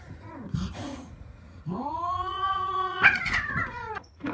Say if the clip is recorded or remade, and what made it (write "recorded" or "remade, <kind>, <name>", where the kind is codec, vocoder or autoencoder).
remade, vocoder, Vocos